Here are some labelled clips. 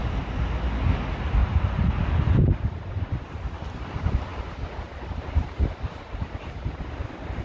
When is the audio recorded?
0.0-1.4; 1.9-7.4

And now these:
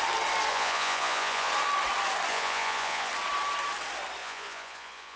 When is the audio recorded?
0.0-0.5; 1.5-2.3; 3.1-4.2

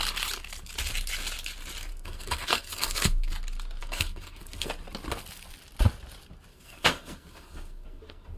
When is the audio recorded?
0.0-1.9; 3.3-3.8; 4.7-6.5